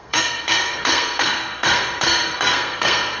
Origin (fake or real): fake